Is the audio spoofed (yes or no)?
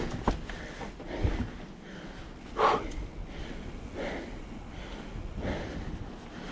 no